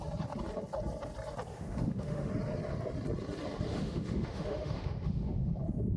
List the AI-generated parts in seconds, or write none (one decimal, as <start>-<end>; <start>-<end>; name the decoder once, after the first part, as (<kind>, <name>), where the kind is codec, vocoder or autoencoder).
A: 1.5-2.3 (autoencoder, DAC-VAE); 3.7-5.5